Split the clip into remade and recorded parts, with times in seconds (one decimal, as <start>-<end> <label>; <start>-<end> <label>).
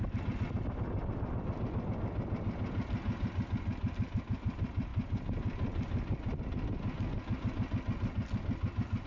0.0-9.1 recorded